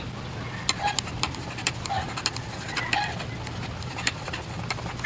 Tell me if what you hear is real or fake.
real